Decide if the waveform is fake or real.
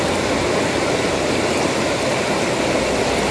real